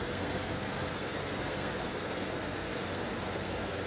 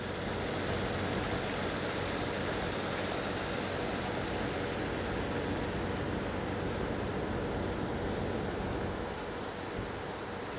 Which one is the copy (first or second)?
first